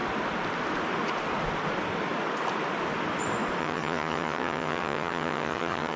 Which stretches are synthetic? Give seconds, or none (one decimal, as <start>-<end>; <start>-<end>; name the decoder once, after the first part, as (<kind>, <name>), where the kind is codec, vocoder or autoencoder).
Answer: 3.6-6.0 (vocoder, HiFi-GAN)